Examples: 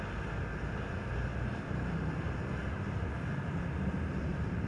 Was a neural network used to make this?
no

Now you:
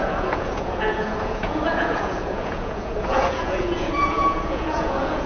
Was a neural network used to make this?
yes